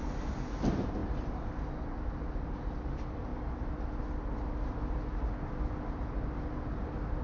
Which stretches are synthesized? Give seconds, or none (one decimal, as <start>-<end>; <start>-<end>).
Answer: none